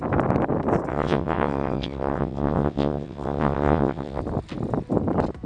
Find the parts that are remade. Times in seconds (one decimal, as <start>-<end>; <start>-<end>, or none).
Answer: 0.9-4.2